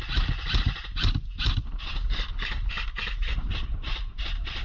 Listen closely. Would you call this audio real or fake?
real